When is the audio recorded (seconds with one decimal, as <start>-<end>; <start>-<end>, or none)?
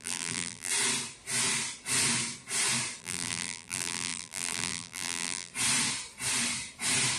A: 0.7-3.0; 5.5-7.2